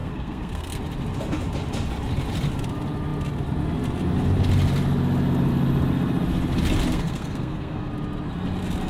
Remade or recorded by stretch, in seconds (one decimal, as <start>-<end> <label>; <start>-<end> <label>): 0.0-0.8 remade; 0.8-6.9 recorded; 6.9-7.9 remade; 7.9-8.9 recorded